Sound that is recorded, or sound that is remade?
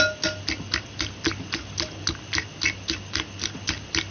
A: recorded